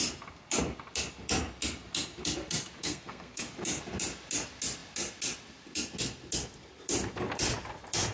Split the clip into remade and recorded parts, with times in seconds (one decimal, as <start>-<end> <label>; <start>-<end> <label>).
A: 0.0-2.8 recorded; 2.8-3.5 remade; 3.5-8.1 recorded